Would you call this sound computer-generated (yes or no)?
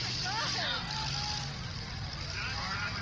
no